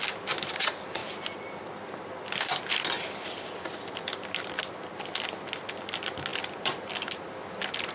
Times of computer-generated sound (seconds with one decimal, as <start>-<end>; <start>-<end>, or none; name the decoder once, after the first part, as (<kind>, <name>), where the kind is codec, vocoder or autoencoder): 1.0-5.0 (vocoder, BigVGAN v2)